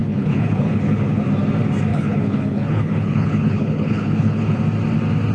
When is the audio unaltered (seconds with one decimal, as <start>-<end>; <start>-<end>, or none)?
1.2-1.9; 4.6-5.3